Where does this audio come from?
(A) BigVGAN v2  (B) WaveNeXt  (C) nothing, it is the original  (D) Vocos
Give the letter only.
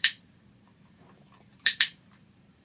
A